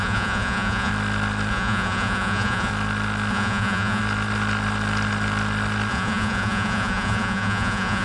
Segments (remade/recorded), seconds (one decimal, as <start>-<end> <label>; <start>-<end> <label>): 0.0-0.9 remade; 0.9-1.5 recorded; 1.5-2.7 remade; 2.7-3.3 recorded; 3.3-4.0 remade; 4.0-5.9 recorded; 5.9-8.0 remade